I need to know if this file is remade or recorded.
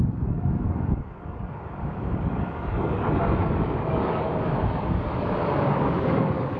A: remade